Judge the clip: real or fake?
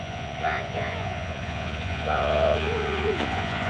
fake